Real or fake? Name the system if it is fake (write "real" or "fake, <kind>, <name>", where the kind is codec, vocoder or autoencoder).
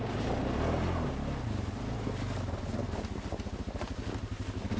real